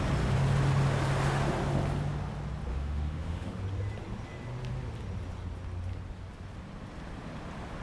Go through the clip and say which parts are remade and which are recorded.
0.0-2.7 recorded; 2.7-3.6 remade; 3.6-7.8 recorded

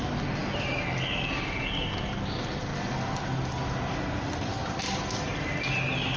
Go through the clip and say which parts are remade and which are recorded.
0.0-6.2 recorded

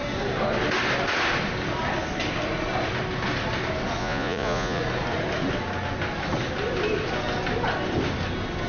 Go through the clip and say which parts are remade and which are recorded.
0.0-4.0 recorded; 4.0-4.8 remade; 4.8-8.7 recorded

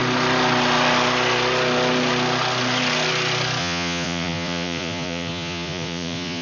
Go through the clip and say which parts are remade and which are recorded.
0.0-3.6 recorded; 3.6-6.4 remade

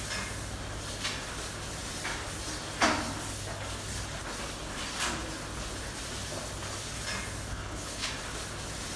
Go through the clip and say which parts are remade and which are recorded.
0.0-7.5 recorded; 7.5-8.1 remade; 8.1-9.0 recorded

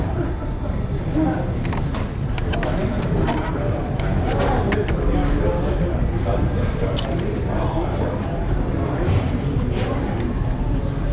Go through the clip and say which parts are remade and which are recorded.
0.0-4.8 recorded; 4.8-7.1 remade; 7.1-11.1 recorded

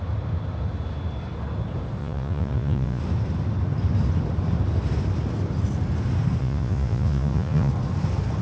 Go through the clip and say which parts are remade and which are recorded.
0.0-2.0 recorded; 2.0-3.0 remade; 3.0-6.4 recorded; 6.4-7.7 remade; 7.7-8.4 recorded

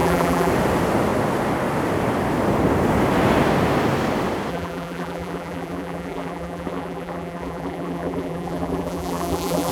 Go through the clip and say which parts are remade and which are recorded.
0.0-0.5 remade; 0.5-4.5 recorded; 4.5-9.7 remade